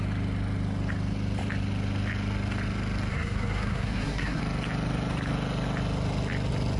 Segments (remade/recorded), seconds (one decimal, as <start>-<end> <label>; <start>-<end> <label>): 0.0-3.1 recorded; 3.1-4.4 remade; 4.4-6.8 recorded

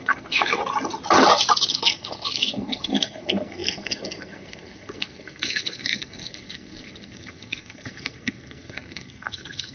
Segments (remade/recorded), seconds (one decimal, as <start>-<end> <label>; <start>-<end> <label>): 0.0-0.6 remade; 0.6-1.7 recorded; 1.7-9.7 remade